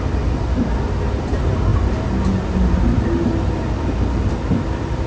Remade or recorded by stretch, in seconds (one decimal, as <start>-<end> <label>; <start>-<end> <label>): 0.0-5.1 recorded